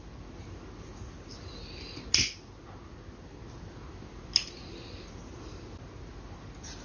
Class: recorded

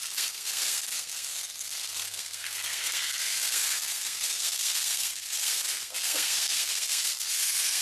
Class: remade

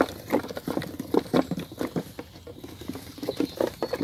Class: recorded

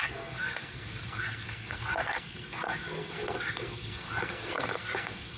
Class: remade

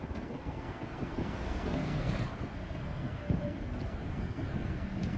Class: remade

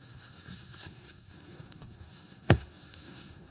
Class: remade